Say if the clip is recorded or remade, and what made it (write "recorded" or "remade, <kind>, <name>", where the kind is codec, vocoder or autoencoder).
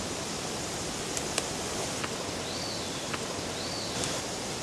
recorded